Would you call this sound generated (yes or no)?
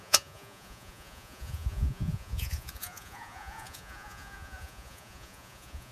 yes